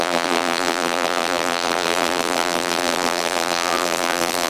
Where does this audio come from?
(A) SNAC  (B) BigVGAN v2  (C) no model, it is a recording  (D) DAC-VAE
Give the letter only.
B